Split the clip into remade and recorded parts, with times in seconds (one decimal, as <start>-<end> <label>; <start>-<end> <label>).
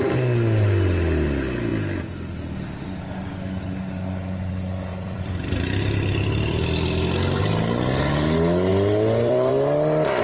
0.0-4.9 recorded; 4.9-7.4 remade; 7.4-8.7 recorded; 8.7-9.5 remade; 9.5-10.2 recorded